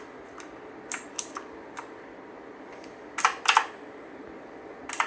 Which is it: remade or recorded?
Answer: recorded